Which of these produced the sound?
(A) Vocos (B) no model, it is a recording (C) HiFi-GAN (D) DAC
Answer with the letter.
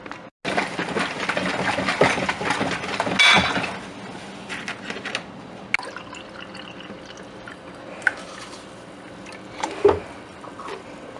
B